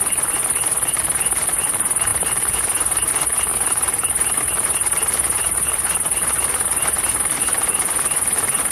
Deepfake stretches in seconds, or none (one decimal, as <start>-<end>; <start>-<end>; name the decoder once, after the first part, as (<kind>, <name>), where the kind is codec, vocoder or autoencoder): 2.1-3.1 (vocoder, BigVGAN v2); 3.5-8.0